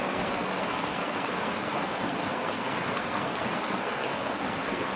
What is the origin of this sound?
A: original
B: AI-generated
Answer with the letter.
B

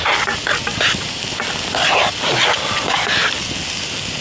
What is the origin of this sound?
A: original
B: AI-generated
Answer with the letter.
A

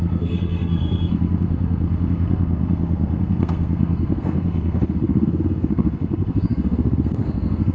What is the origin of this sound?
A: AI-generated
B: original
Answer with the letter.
A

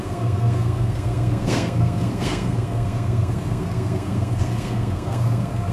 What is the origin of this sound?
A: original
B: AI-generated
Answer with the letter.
B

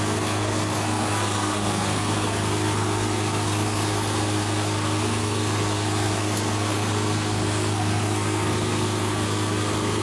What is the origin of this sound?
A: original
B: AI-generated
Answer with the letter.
B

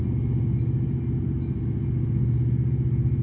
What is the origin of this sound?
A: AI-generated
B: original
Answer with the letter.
B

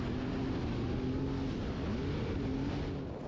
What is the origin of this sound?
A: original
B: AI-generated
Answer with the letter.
A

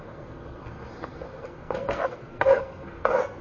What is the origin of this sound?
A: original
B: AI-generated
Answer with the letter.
B